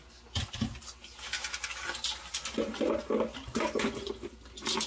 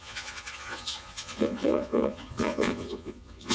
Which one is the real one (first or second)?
first